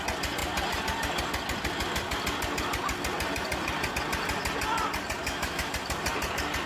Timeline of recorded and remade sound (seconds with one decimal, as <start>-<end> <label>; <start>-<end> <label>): 0.0-5.2 recorded; 5.2-5.7 remade; 5.7-6.7 recorded